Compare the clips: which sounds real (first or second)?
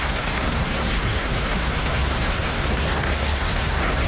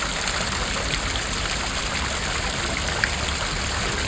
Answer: second